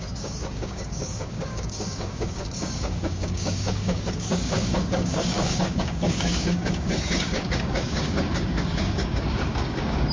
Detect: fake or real fake